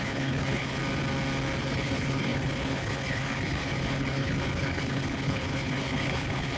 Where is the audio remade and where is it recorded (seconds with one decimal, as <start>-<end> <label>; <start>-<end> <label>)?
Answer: 0.0-0.8 remade; 0.8-1.6 recorded; 1.6-6.6 remade